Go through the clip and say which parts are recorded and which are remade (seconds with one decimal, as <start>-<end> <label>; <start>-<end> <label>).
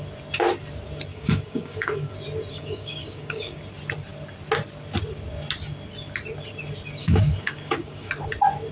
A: 0.0-1.1 recorded; 1.1-2.1 remade; 2.1-2.5 recorded; 2.5-3.6 remade; 3.6-7.0 recorded; 7.0-8.1 remade; 8.1-8.7 recorded